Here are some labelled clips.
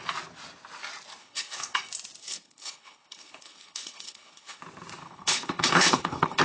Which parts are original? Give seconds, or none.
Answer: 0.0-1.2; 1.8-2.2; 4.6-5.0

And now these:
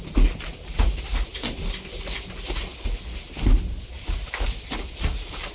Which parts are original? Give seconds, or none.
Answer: 0.0-5.5

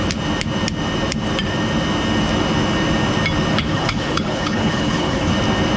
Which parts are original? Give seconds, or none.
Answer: 0.0-3.6; 5.3-5.8

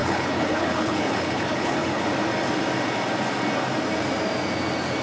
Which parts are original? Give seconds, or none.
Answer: 2.0-5.0

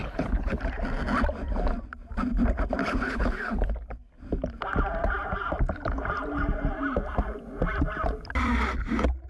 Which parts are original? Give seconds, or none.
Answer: 0.6-2.8; 3.7-9.3

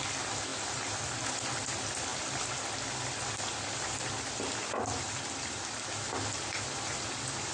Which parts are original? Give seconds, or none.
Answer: 0.0-7.5

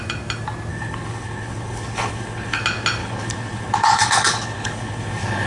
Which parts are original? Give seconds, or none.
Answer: 0.0-0.7; 2.6-3.0

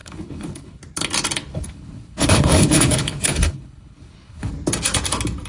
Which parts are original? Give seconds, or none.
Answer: 0.8-1.5; 4.5-5.5